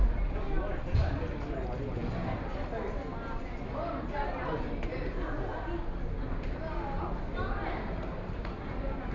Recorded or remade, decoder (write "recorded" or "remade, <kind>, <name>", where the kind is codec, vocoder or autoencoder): recorded